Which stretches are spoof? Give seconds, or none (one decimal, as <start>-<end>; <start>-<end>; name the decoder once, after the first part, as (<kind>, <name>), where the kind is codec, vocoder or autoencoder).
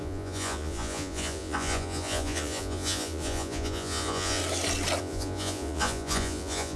0.0-4.4 (vocoder, Vocos); 5.0-6.8